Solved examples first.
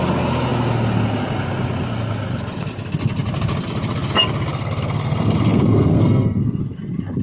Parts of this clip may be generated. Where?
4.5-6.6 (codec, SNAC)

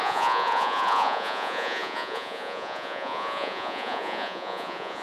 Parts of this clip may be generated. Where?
0.0-5.0 (vocoder, Vocos)

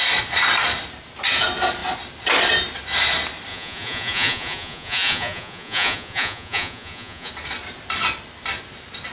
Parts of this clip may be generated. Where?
3.5-7.3 (vocoder, Vocos)

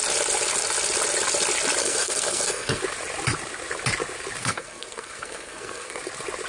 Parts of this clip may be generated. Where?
1.8-2.8 (codec, SNAC); 4.4-6.0

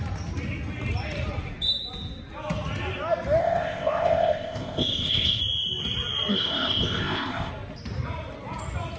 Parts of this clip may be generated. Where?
3.4-5.4 (codec, ZipCodec); 6.3-7.5

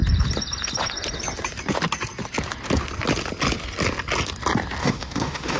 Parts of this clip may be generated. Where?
4.8-5.6 (autoencoder, DAC-VAE)

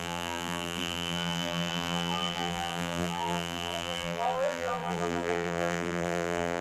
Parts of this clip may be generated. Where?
0.0-6.6 (vocoder, BigVGAN v2)

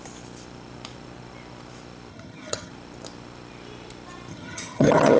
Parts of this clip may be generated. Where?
2.1-2.7 (vocoder, HiFi-GAN); 4.3-5.2